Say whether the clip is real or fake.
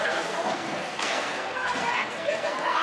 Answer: fake